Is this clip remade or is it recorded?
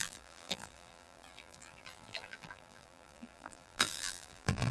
remade